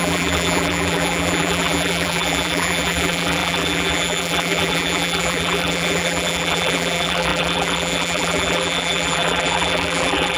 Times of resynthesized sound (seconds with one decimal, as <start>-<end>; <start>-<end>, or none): 0.0-10.4